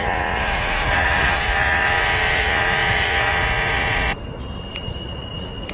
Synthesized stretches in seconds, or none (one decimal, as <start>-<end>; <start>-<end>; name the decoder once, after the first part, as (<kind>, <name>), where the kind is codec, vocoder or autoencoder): 0.0-5.7 (vocoder, Vocos)